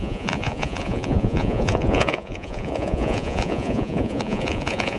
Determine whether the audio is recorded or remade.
remade